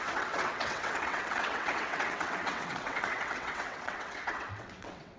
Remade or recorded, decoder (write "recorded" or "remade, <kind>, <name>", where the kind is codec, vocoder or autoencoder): remade, vocoder, WaveNeXt